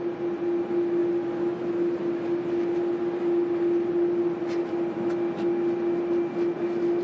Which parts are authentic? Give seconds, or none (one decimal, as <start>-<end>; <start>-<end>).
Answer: 0.0-7.0